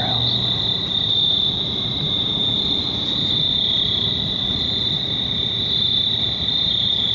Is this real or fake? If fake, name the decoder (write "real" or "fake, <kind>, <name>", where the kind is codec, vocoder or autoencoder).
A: fake, vocoder, BigVGAN v2